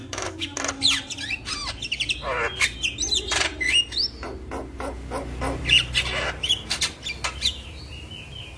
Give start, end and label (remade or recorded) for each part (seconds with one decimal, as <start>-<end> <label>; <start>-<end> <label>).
0.0-0.6 remade; 0.6-8.6 recorded